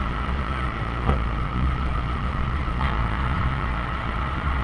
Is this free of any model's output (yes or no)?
no